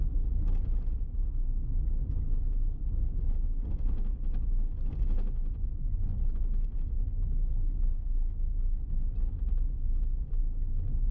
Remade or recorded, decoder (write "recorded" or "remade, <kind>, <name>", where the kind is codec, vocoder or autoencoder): recorded